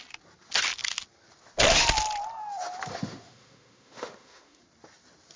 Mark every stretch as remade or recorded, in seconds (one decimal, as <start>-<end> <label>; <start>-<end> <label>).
0.0-2.9 recorded; 2.9-4.6 remade; 4.6-5.4 recorded